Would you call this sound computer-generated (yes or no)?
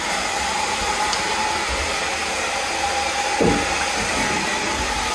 no